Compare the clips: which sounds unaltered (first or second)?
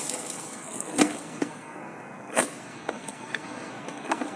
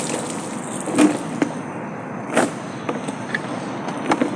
second